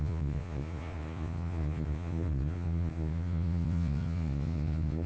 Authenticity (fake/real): fake